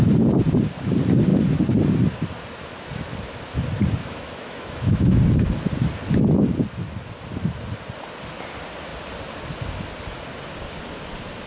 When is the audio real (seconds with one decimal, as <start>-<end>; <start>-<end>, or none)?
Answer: 0.0-4.0; 5.2-11.5